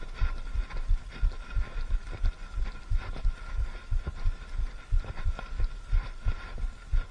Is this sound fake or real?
real